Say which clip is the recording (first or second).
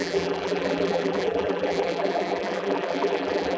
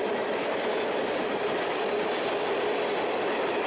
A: second